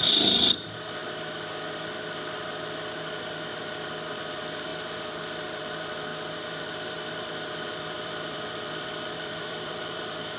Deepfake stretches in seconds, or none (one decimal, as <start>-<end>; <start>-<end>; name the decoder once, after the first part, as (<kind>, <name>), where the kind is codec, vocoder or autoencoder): 0.0-1.0 (vocoder, BigVGAN v2); 4.3-10.4